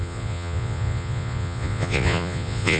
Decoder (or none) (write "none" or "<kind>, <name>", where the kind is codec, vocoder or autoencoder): vocoder, Vocos